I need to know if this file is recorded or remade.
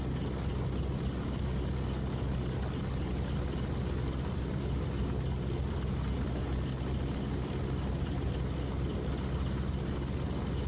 recorded